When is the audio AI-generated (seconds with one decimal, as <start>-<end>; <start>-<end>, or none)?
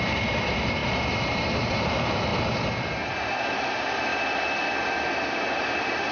0.0-2.3; 3.1-4.1; 5.4-6.1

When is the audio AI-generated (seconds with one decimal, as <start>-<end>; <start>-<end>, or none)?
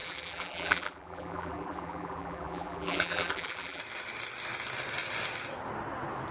0.0-3.8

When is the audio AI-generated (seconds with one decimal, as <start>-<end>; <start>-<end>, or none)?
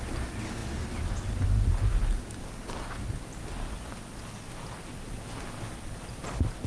none